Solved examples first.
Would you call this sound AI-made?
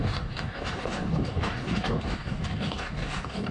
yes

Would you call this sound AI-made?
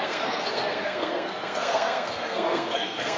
yes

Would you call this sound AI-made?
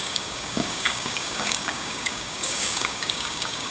yes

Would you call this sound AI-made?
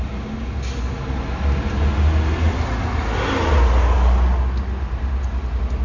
no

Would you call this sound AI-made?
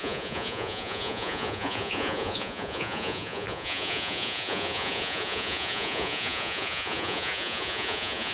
yes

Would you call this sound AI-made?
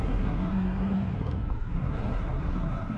yes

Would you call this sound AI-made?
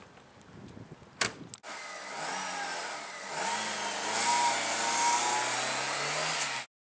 no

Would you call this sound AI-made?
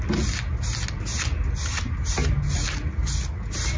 no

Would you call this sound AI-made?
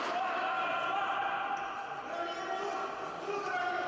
no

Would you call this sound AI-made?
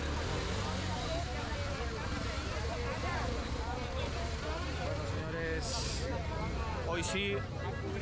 no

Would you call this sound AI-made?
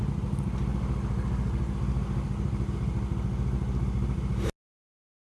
no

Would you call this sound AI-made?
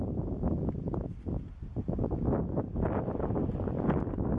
no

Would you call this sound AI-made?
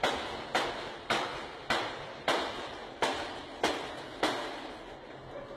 no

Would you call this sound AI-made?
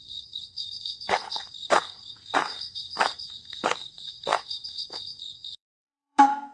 yes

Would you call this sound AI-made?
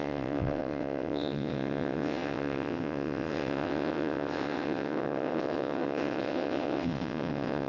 yes